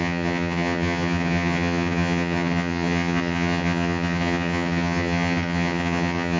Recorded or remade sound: remade